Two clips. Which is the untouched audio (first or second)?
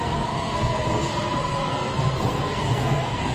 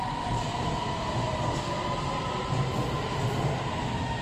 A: second